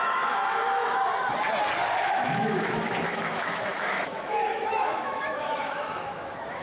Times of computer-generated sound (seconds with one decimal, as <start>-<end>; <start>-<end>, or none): 0.0-1.1; 2.0-6.6